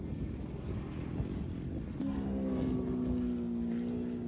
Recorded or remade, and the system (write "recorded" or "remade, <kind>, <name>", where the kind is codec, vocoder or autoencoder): recorded